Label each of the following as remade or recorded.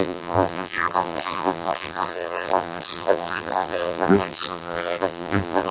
remade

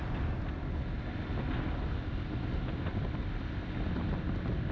recorded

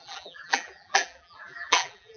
remade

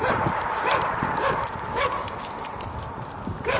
remade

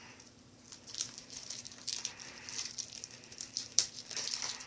remade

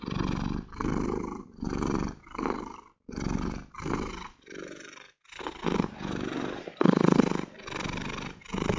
remade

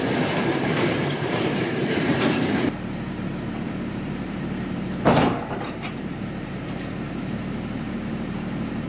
remade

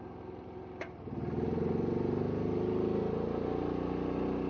recorded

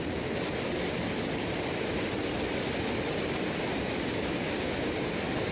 remade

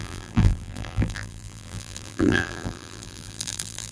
remade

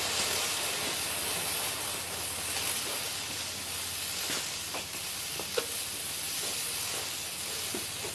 recorded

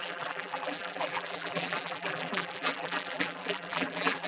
remade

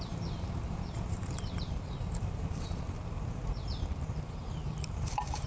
remade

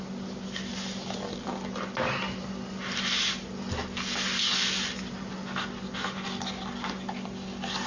recorded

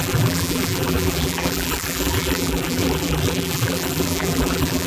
remade